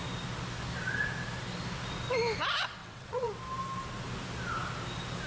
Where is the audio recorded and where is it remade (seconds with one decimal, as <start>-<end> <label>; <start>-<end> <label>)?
0.0-2.8 recorded; 2.8-3.3 remade; 3.3-5.3 recorded